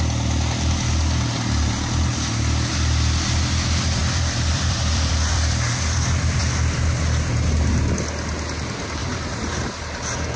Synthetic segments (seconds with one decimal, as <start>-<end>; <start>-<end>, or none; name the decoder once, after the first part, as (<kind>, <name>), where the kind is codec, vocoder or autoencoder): 4.0-6.4 (vocoder, BigVGAN v2); 9.0-9.5